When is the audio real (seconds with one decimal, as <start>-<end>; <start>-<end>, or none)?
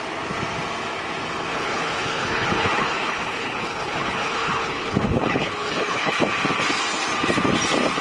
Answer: 0.0-1.5; 6.1-8.0